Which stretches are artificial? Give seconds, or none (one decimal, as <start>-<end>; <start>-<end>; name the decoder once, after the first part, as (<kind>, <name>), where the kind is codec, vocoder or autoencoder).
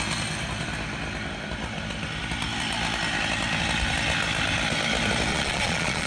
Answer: 5.3-6.1 (vocoder, Vocos)